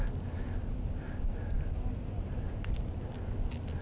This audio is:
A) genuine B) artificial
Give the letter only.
A